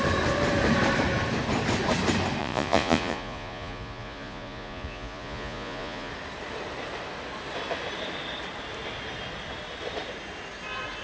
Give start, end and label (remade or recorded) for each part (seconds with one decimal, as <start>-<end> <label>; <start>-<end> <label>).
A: 0.0-2.4 recorded; 2.4-6.1 remade; 6.1-11.0 recorded